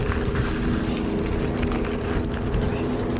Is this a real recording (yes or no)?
yes